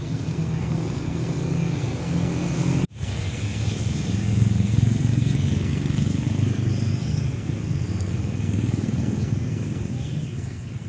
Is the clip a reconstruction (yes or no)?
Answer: yes